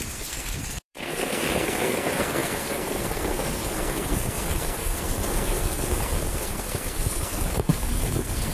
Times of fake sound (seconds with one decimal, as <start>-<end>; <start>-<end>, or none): 0.0-8.5